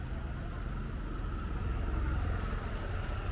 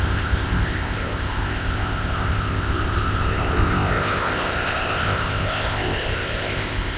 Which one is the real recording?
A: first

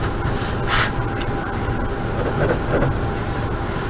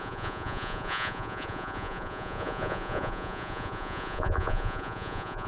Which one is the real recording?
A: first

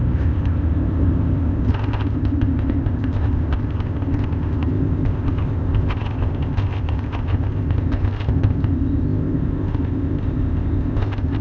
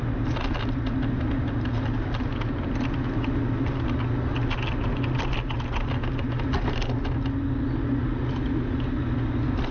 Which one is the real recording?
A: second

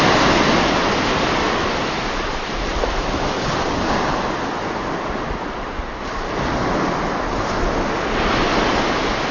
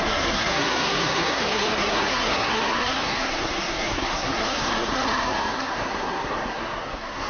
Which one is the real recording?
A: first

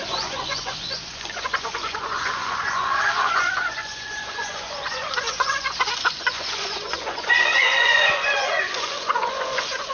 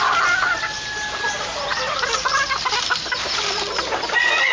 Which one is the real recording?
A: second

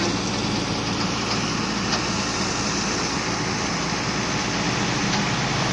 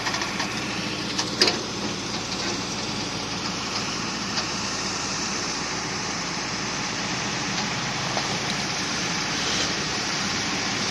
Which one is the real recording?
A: first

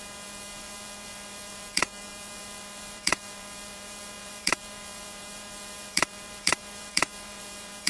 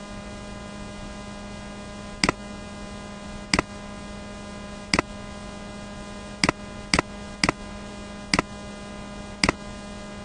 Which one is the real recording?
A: second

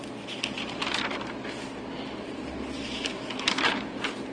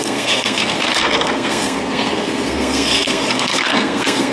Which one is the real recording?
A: first